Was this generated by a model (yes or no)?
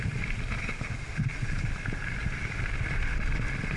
no